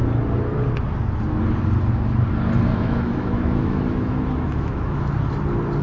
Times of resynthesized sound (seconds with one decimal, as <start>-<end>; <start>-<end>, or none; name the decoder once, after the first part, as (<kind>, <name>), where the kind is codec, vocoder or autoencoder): 2.7-5.0 (autoencoder, DAC-VAE)